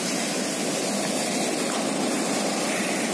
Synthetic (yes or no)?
no